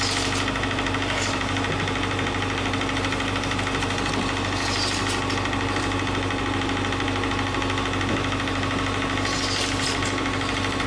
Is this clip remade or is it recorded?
recorded